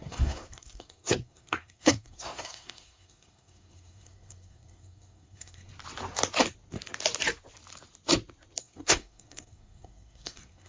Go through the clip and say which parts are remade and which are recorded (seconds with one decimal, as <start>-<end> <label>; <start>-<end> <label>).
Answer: 0.0-5.7 remade; 5.7-8.6 recorded; 8.6-10.7 remade